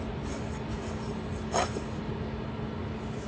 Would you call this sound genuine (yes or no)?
yes